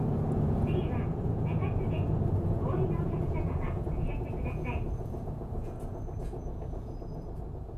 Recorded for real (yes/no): no